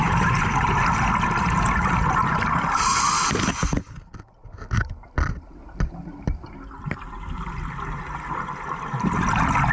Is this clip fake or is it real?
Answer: real